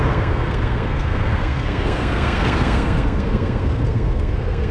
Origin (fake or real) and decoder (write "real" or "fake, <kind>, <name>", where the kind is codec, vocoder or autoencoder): fake, codec, SNAC